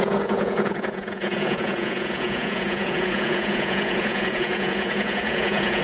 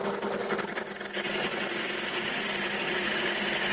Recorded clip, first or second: second